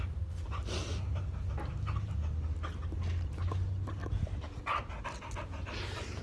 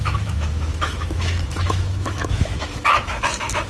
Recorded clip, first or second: first